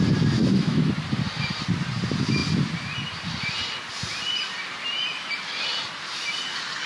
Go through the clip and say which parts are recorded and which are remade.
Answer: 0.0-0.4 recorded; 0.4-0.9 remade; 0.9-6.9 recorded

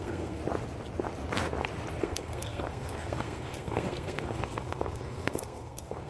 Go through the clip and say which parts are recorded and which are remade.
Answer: 0.0-0.4 remade; 0.4-2.0 recorded; 2.0-6.1 remade

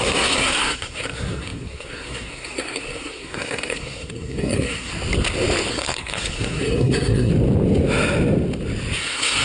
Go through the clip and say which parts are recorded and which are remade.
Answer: 0.0-4.9 remade; 4.9-5.7 recorded; 5.7-7.3 remade; 7.3-9.0 recorded; 9.0-9.4 remade

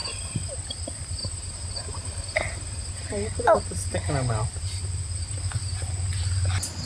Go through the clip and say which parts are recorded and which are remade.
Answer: 0.0-6.9 recorded

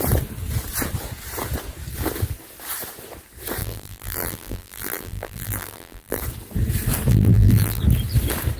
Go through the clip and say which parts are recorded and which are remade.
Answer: 0.0-3.6 recorded; 3.6-6.2 remade; 6.2-7.1 recorded; 7.1-7.8 remade; 7.8-8.6 recorded